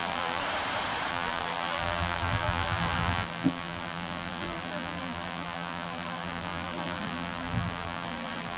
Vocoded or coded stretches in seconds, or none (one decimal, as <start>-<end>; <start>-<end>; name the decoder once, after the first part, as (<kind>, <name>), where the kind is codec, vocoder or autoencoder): 0.0-0.4 (vocoder, BigVGAN v2); 1.1-8.6